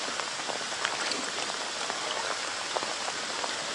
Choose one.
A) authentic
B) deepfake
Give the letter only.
A